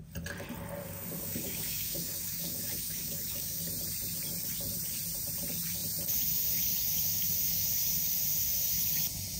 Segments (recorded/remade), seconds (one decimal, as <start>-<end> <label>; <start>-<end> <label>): 0.0-0.8 recorded; 0.8-3.6 remade; 3.6-9.4 recorded